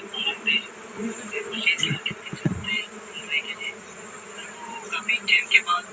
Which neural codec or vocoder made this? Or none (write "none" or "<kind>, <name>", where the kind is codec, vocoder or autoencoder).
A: none